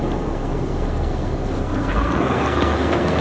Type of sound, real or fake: fake